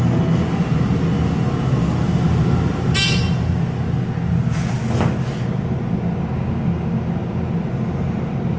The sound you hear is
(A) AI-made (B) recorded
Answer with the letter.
B